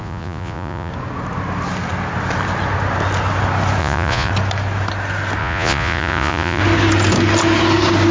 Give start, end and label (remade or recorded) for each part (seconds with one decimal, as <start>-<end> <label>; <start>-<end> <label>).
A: 0.0-0.9 remade; 0.9-3.8 recorded; 3.8-4.3 remade; 4.3-5.4 recorded; 5.4-6.6 remade; 6.6-8.1 recorded